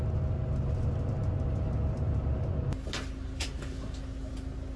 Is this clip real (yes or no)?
yes